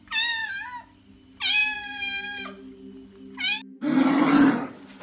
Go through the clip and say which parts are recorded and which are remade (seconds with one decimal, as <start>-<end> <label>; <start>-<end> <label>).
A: 0.0-5.0 recorded